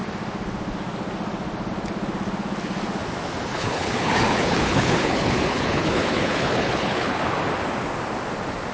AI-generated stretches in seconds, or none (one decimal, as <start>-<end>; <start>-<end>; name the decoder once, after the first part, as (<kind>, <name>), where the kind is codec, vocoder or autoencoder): 3.5-7.2 (codec, HILCodec)